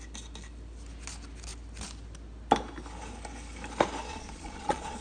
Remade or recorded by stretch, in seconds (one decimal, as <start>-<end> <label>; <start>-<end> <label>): 0.0-4.1 recorded; 4.1-5.0 remade